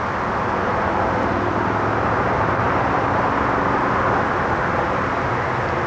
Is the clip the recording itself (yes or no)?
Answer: yes